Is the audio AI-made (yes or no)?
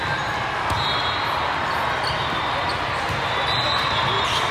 no